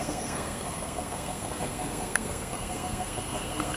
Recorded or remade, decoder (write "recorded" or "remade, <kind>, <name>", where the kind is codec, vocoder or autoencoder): remade, codec, SNAC